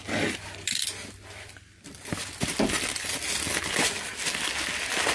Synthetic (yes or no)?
no